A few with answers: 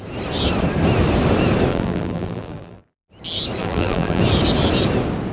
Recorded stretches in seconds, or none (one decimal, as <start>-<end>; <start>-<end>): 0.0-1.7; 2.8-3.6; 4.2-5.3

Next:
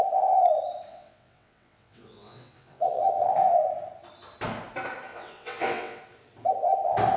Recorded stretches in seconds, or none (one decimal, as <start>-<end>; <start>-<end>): 0.0-0.9; 3.3-5.1; 6.0-7.2

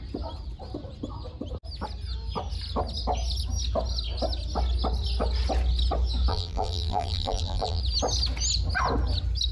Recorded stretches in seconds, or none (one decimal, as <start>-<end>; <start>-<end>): 0.0-6.3; 7.8-9.5

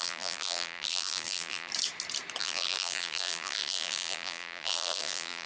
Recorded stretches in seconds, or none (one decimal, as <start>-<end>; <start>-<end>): 1.7-2.4

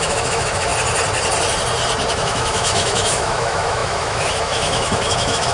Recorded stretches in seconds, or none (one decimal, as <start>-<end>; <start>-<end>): 0.7-2.1

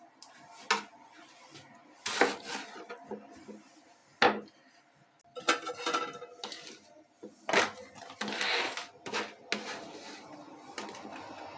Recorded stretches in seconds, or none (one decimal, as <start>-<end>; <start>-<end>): 0.0-11.6

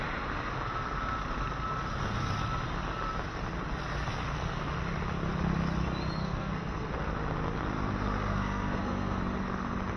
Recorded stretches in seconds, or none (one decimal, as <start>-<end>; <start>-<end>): 0.0-6.2; 6.9-8.3; 9.2-10.0

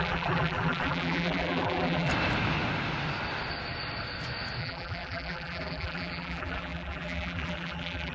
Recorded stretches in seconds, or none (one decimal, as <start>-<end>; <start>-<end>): 2.1-4.6